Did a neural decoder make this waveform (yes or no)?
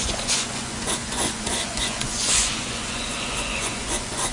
yes